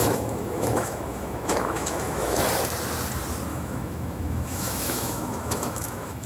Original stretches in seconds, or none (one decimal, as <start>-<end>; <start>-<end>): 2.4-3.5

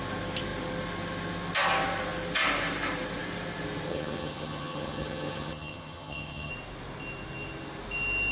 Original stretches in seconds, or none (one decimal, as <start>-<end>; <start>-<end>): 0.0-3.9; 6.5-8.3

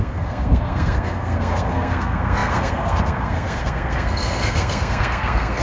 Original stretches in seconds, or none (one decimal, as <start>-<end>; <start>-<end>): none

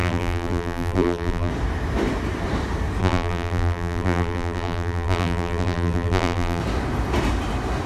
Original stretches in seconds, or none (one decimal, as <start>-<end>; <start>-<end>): 1.5-3.0; 6.6-7.9